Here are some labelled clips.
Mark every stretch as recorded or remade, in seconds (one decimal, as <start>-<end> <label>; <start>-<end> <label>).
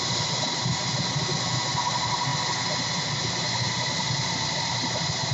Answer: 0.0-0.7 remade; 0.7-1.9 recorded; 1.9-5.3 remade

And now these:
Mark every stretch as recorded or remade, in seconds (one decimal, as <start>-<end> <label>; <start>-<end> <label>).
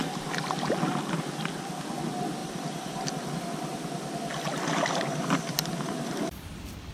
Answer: 0.0-2.4 recorded; 2.4-3.3 remade; 3.3-4.3 recorded; 4.3-6.3 remade; 6.3-6.9 recorded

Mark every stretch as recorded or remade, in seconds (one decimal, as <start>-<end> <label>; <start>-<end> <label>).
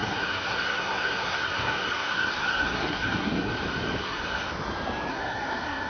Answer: 0.0-3.5 remade; 3.5-4.0 recorded; 4.0-4.5 remade; 4.5-5.1 recorded; 5.1-5.9 remade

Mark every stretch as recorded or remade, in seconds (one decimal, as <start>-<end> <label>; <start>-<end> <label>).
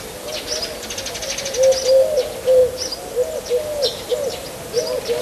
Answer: 0.0-5.2 recorded